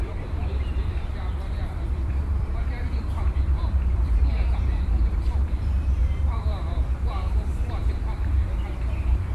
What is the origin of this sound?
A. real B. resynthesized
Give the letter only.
B